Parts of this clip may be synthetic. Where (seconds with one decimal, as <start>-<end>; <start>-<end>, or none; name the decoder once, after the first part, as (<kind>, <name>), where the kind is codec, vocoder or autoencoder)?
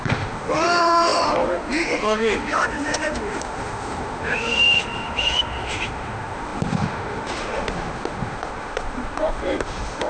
0.0-10.1 (autoencoder, DAC-VAE)